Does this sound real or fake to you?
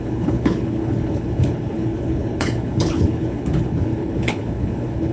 fake